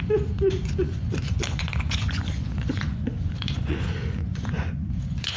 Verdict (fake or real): fake